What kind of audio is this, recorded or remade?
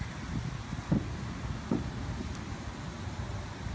recorded